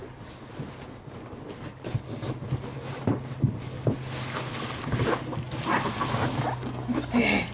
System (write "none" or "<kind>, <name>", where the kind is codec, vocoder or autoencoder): none